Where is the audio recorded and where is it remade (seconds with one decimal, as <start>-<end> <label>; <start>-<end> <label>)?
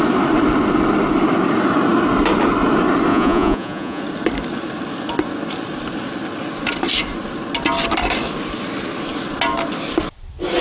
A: 0.0-3.1 recorded; 3.1-4.0 remade; 4.0-10.6 recorded